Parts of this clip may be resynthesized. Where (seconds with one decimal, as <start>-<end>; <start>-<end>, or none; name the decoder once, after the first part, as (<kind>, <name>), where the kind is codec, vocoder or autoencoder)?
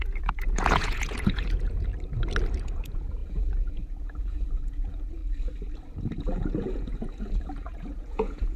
0.0-1.9 (vocoder, Vocos); 2.6-5.2; 6.2-8.6